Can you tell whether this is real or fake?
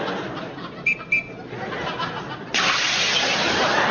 real